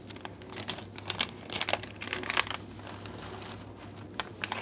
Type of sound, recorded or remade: recorded